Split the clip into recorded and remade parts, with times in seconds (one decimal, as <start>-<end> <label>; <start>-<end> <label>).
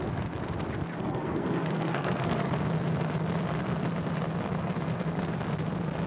0.0-1.0 recorded; 1.0-2.5 remade; 2.5-6.1 recorded